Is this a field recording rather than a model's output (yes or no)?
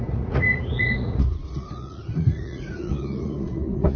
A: no